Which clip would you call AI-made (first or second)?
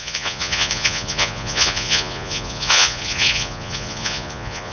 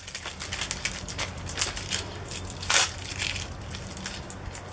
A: first